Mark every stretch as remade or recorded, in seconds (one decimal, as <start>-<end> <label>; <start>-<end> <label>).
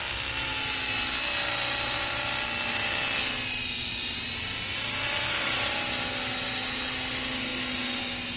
0.0-8.4 recorded